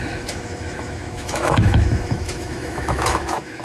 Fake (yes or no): yes